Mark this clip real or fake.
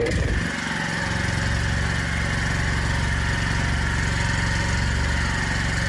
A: real